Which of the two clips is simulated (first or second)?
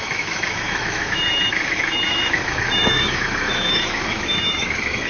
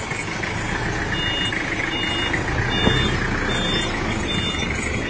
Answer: first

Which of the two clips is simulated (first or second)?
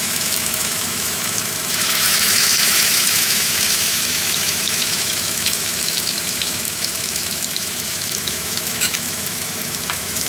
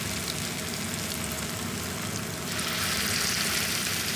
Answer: first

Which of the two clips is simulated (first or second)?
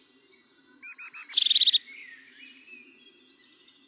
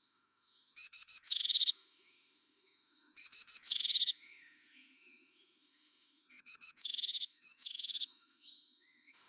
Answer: second